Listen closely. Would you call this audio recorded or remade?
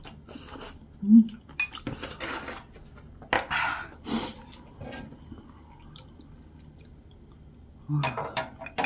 recorded